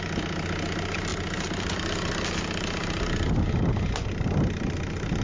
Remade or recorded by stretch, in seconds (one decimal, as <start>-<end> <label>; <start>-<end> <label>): 0.0-5.2 recorded